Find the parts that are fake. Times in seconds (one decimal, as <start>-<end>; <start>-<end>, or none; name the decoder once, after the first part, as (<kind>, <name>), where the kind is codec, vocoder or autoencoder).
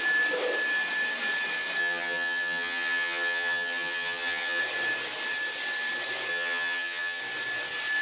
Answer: 1.8-4.6 (vocoder, HiFi-GAN); 6.3-7.2